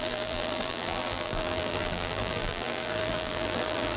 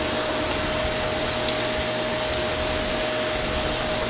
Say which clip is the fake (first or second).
first